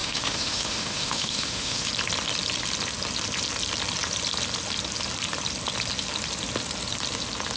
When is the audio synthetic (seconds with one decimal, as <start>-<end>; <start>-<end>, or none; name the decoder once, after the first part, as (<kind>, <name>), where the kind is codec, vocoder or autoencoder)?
0.0-1.9 (autoencoder, DAC-VAE)